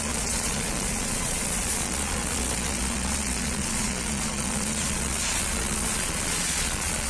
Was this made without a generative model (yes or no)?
no